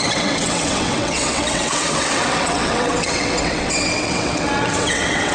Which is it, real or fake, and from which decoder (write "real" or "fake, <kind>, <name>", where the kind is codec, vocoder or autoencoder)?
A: fake, vocoder, WaveNeXt